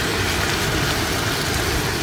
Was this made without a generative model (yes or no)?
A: yes